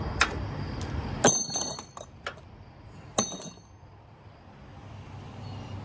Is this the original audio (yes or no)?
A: yes